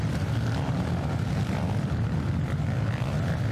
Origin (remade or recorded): recorded